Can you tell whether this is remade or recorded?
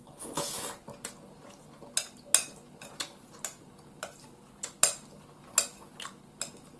recorded